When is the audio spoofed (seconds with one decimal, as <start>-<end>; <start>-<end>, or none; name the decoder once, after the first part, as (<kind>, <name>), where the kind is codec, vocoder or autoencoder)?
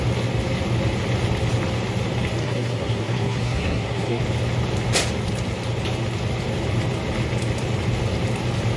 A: 2.4-4.2 (codec, SNAC)